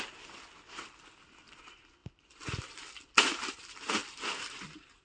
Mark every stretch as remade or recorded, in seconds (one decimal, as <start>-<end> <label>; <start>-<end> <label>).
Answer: 0.0-5.0 recorded